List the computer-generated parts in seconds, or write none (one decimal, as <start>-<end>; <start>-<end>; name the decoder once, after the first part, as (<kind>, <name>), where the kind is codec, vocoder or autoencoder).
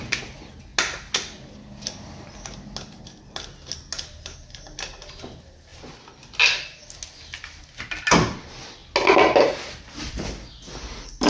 none